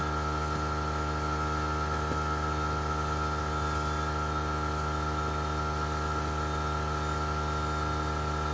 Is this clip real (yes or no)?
yes